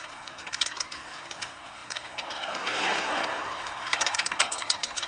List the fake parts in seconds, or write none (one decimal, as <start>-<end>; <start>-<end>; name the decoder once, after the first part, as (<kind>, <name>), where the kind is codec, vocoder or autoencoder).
0.0-5.1 (codec, SNAC)